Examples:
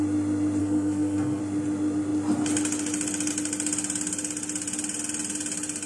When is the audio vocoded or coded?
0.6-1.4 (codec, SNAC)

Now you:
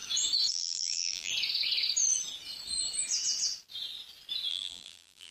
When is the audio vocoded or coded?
0.5-1.3 (vocoder, BigVGAN v2); 4.5-5.3

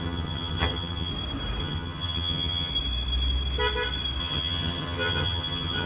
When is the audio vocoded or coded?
0.0-1.1 (vocoder, HiFi-GAN); 1.6-2.7; 4.2-5.9

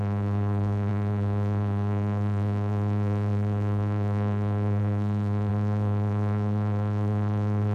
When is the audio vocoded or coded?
0.0-7.7 (codec, SNAC)

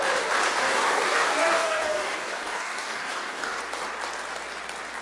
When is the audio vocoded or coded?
0.6-3.6 (codec, DAC)

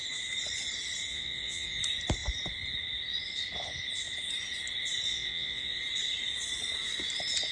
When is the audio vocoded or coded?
1.1-1.8 (vocoder, Vocos); 5.1-5.8